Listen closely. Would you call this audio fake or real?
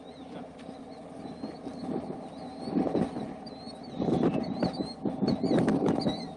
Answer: real